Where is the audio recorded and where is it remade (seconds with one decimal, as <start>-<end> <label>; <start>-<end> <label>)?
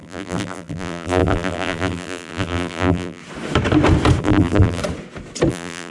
0.0-3.2 remade; 3.2-4.2 recorded; 4.2-4.8 remade; 4.8-5.5 recorded; 5.5-5.9 remade